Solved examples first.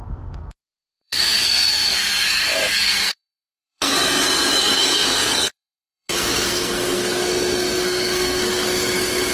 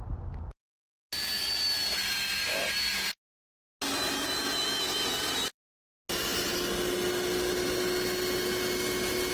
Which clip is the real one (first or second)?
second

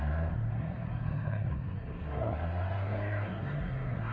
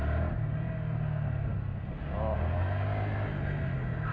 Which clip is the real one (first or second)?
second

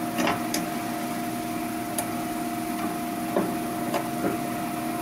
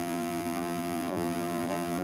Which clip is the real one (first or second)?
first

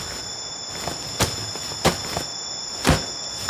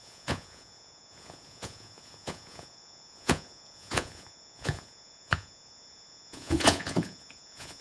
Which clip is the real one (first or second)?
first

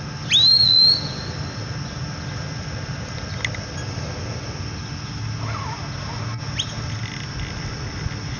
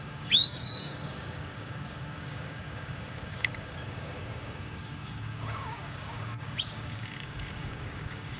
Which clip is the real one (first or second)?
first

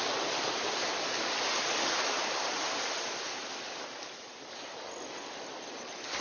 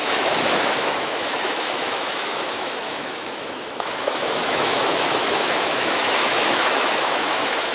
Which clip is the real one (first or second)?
first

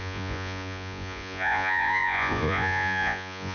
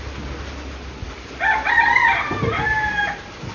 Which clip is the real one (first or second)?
second